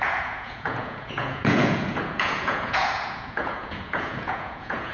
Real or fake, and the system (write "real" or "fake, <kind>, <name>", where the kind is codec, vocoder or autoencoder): fake, vocoder, Vocos